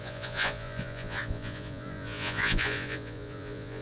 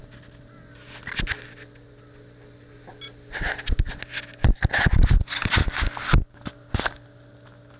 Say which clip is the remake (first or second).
first